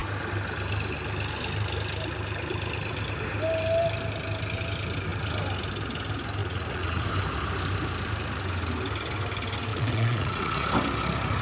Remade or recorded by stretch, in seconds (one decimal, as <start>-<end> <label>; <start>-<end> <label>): 0.0-6.4 recorded; 6.4-7.0 remade; 7.0-9.7 recorded; 9.7-10.7 remade; 10.7-11.4 recorded